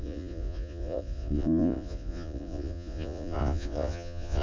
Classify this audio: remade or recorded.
remade